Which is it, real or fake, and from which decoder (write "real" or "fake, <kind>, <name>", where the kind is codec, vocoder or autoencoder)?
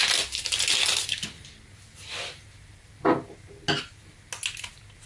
real